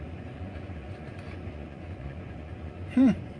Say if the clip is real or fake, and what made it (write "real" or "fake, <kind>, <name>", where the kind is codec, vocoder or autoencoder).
fake, vocoder, Vocos